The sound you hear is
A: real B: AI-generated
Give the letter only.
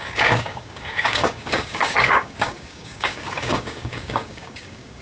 B